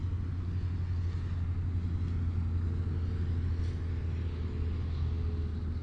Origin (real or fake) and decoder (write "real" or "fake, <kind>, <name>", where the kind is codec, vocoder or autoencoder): real